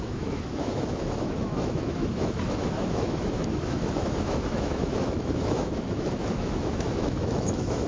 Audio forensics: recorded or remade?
remade